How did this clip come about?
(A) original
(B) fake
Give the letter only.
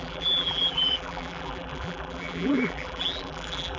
B